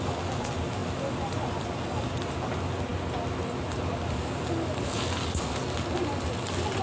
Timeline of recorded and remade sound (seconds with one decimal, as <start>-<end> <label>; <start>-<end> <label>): 0.0-6.8 recorded